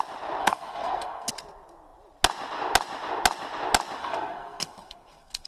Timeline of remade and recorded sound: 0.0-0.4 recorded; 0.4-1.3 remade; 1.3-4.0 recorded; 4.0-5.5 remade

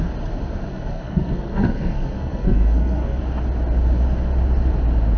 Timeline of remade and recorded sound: 0.0-0.7 recorded; 0.7-3.2 remade; 3.2-5.2 recorded

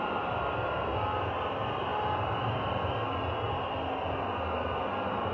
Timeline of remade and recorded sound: 0.0-5.3 recorded

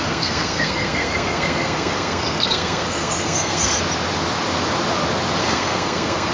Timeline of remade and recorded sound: 0.0-3.8 remade; 3.8-5.4 recorded; 5.4-6.3 remade

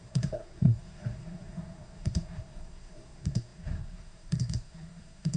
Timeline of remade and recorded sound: 0.0-5.4 remade